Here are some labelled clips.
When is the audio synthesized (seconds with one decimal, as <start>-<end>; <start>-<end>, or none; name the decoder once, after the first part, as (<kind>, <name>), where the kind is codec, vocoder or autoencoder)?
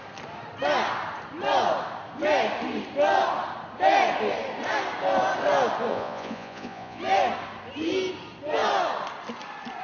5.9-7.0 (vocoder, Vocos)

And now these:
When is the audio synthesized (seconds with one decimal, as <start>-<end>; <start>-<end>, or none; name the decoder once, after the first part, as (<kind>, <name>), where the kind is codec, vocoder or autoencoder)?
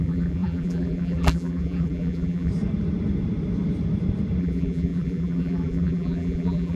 0.0-2.5 (vocoder, BigVGAN v2); 4.4-6.8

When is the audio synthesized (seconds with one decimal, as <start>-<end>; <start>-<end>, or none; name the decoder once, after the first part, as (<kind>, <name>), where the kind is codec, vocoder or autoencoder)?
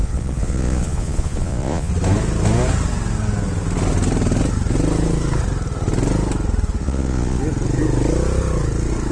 0.0-1.9 (vocoder, Vocos); 6.8-7.4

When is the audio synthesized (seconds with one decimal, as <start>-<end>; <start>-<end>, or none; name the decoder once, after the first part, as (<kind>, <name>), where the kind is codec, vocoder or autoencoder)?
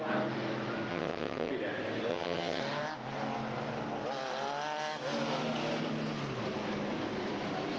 0.9-1.5 (vocoder, HiFi-GAN); 2.1-2.6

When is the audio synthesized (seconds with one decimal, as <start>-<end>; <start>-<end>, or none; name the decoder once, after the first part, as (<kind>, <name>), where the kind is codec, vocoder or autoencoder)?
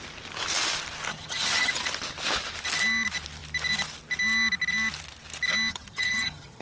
1.1-1.7 (vocoder, HiFi-GAN); 5.7-6.6